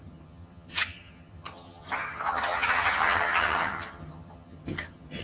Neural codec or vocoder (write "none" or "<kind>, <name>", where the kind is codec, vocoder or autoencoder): vocoder, HiFi-GAN